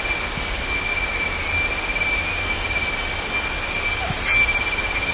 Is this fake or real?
real